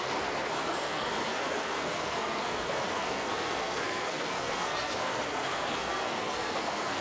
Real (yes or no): no